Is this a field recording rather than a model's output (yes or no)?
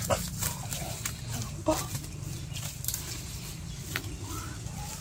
yes